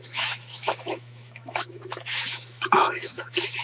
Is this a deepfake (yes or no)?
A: yes